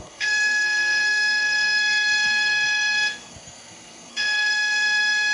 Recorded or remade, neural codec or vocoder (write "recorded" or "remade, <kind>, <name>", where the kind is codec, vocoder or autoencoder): remade, codec, SNAC